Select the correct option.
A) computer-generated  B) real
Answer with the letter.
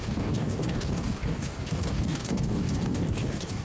A